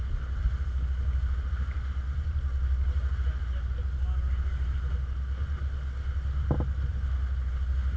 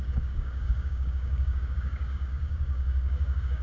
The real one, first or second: first